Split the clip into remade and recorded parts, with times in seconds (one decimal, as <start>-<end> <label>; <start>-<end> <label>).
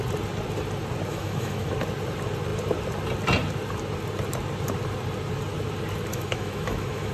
0.0-1.1 recorded; 1.1-1.7 remade; 1.7-6.1 recorded; 6.1-7.1 remade